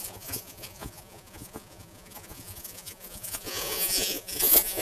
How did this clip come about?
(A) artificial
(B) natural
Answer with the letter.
A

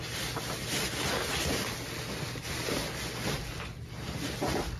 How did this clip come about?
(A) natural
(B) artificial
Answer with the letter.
A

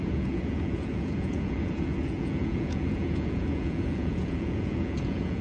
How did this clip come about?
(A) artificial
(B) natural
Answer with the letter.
A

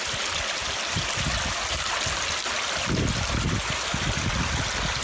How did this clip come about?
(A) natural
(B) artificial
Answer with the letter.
A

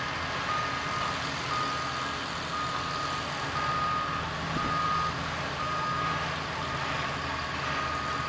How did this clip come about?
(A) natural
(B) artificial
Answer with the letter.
A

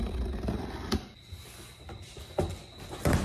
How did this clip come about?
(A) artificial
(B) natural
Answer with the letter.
B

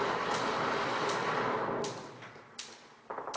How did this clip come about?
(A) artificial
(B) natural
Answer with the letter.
B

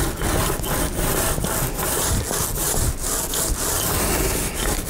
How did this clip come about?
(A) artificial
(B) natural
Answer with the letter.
B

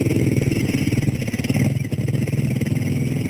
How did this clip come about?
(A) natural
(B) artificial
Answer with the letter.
A